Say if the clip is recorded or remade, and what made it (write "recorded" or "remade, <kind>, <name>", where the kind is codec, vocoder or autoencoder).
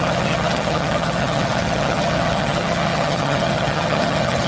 remade, vocoder, HiFi-GAN